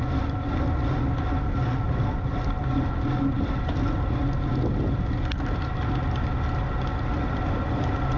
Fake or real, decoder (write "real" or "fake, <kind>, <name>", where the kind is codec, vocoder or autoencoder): real